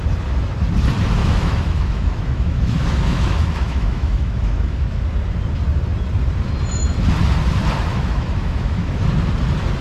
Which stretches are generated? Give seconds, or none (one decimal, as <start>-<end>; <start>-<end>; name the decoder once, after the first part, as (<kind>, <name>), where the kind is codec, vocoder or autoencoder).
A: 1.2-5.0 (autoencoder, DAC-VAE); 7.9-9.0